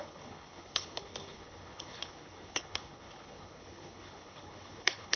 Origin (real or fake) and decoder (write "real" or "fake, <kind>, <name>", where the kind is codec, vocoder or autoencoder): fake, codec, HILCodec